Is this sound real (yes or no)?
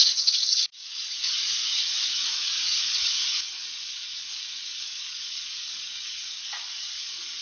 no